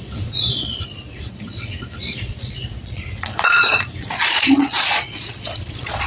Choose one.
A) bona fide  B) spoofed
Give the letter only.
B